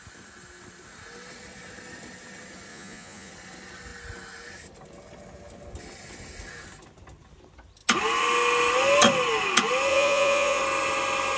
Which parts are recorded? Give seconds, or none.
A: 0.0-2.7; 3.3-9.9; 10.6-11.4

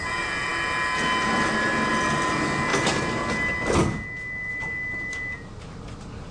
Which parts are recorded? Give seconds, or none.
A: 0.0-6.3

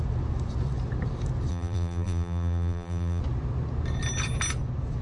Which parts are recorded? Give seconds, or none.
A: 0.0-1.5; 3.2-5.0